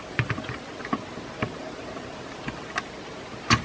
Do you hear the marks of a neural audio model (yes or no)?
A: no